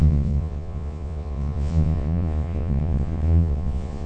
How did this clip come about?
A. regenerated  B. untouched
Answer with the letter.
A